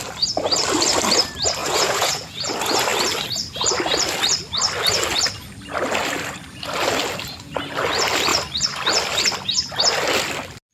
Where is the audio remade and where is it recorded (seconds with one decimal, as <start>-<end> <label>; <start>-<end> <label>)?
0.0-1.6 recorded; 1.6-2.5 remade; 2.5-10.7 recorded